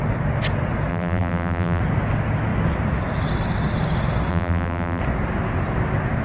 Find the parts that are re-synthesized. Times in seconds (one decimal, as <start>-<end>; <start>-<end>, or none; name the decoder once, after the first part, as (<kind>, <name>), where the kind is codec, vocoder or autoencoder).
0.9-1.8 (vocoder, BigVGAN v2); 4.3-5.0